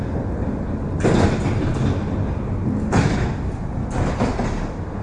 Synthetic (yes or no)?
no